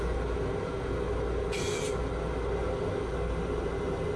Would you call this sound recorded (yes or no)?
yes